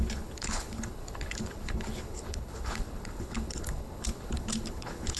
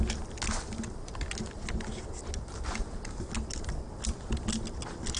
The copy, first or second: first